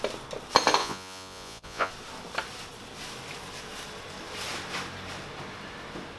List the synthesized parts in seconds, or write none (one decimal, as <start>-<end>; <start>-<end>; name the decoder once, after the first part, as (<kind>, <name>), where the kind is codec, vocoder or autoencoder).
0.8-1.9 (vocoder, Vocos)